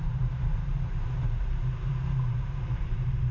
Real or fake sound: fake